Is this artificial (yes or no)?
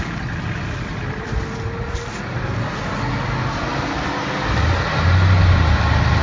no